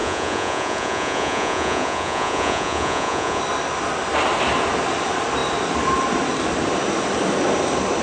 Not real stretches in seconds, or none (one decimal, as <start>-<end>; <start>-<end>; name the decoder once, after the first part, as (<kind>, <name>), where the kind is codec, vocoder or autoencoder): 0.0-3.4 (vocoder, Vocos)